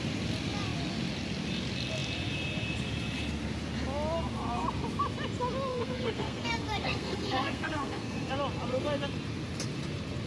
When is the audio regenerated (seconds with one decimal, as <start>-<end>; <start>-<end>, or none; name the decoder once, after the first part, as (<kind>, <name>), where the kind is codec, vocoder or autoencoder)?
5.7-8.3 (codec, SNAC)